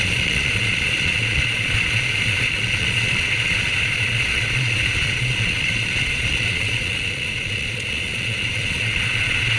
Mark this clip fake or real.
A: fake